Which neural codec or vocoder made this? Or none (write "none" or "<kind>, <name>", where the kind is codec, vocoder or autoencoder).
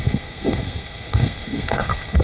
codec, SNAC